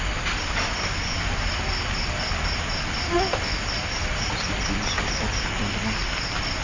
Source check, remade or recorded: recorded